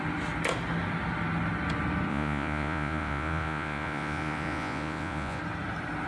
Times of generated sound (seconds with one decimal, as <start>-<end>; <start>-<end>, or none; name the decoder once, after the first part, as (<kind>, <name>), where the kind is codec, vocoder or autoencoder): 2.1-5.4 (vocoder, Vocos)